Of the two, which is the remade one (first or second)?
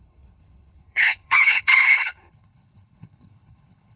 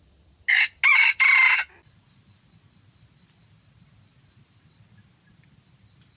first